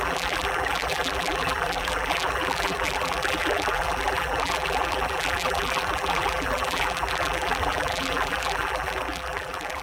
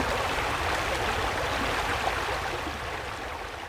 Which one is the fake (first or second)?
first